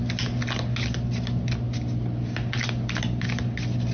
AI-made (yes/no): no